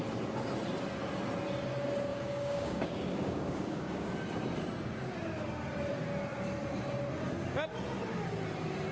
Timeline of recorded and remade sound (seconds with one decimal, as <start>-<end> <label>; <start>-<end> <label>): 0.0-2.1 recorded; 2.1-4.1 remade; 4.1-8.9 recorded